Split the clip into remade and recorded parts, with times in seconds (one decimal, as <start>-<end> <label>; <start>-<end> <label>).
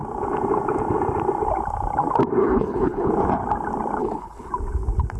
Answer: 0.0-2.4 recorded; 2.4-3.1 remade; 3.1-4.0 recorded; 4.0-4.5 remade; 4.5-5.2 recorded